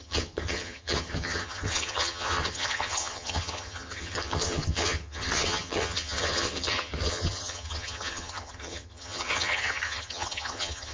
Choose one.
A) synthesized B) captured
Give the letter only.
A